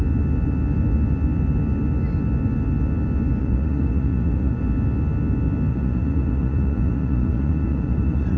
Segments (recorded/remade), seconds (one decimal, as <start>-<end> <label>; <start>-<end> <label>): 0.0-3.4 recorded; 3.4-4.6 remade; 4.6-5.7 recorded; 5.7-8.4 remade